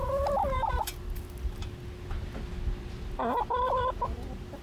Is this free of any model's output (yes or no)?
yes